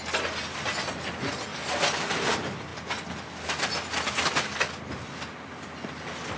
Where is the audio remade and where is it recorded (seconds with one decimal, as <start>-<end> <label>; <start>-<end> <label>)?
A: 0.0-6.4 recorded